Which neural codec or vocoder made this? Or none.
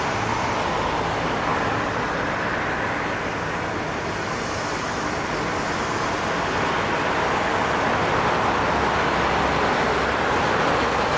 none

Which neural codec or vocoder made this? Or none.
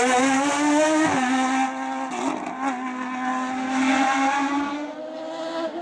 none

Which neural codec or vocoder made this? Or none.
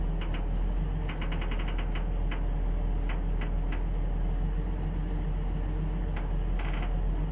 none